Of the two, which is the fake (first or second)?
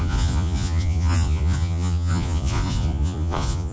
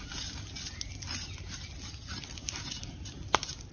first